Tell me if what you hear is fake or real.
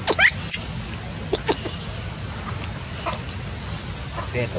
real